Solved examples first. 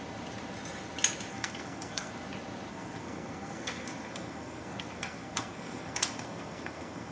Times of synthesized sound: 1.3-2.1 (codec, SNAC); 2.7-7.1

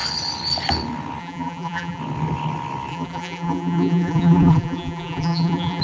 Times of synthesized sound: 1.2-2.0 (vocoder, BigVGAN v2); 2.9-5.8

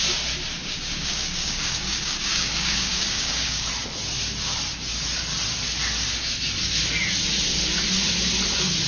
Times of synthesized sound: 0.6-3.7 (codec, DAC)

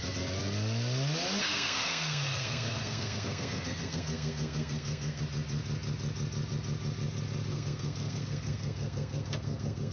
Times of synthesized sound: 1.4-5.2 (codec, SNAC); 7.5-9.9